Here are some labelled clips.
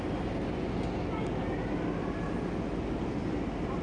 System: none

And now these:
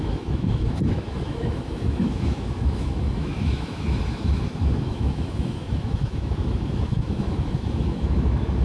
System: autoencoder, DAC-VAE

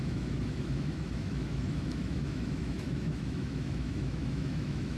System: autoencoder, DAC-VAE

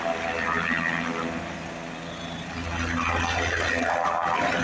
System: none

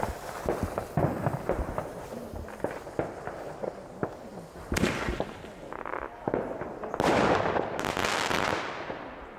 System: none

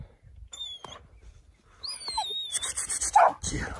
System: none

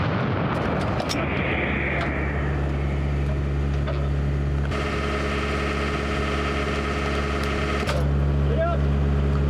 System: none